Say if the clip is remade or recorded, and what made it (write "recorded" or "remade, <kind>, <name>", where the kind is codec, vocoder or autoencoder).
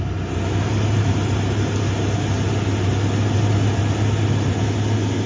recorded